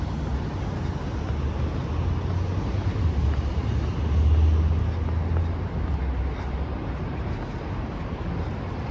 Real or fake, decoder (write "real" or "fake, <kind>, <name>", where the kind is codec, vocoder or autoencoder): real